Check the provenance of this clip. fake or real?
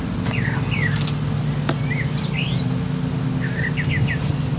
real